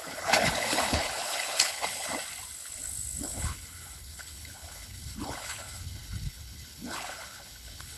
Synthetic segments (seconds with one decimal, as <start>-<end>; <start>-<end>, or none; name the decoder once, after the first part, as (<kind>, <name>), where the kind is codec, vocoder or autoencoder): 0.0-2.1 (codec, HILCodec); 3.2-8.0